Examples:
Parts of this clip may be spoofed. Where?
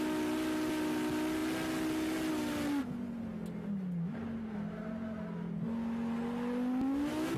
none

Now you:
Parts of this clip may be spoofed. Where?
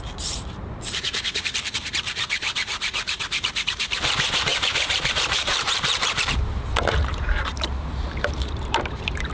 0.0-9.3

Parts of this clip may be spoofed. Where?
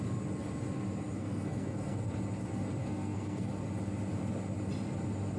1.2-2.1; 2.8-3.5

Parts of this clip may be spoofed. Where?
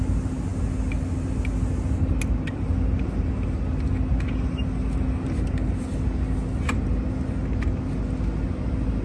none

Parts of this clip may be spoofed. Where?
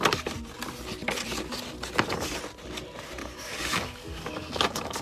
3.2-5.0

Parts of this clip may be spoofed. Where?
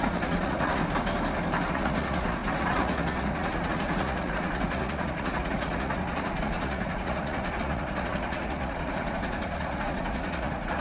0.0-0.8; 1.7-10.8